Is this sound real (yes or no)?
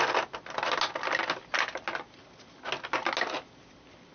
yes